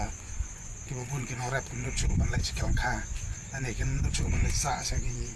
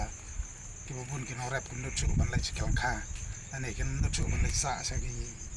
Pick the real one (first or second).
second